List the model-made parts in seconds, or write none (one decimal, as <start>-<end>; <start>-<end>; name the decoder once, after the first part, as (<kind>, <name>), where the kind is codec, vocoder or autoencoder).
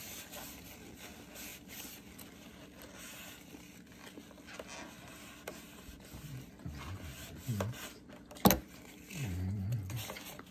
none